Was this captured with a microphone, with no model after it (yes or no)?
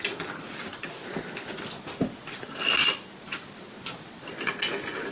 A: yes